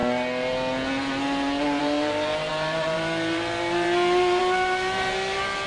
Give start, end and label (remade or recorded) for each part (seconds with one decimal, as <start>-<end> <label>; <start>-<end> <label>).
0.0-1.8 recorded; 1.8-5.7 remade